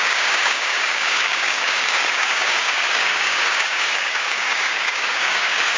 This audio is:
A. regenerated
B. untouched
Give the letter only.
A